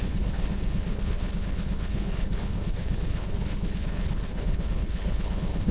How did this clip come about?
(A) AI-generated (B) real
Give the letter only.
A